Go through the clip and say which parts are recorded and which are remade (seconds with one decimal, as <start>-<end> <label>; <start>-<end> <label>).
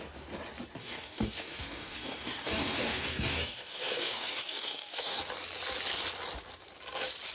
0.0-0.8 recorded; 0.8-5.2 remade; 5.2-7.3 recorded